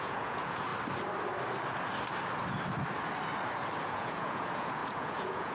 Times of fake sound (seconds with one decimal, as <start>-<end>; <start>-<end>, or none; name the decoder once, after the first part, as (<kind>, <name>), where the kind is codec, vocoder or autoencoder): 0.0-0.7 (vocoder, Vocos); 3.8-5.5